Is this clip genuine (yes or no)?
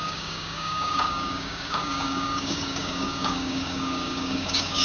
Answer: no